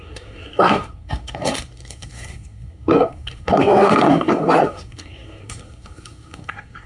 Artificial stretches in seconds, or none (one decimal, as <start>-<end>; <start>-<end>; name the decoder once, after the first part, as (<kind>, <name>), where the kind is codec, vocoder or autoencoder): 0.0-6.9 (codec, SNAC)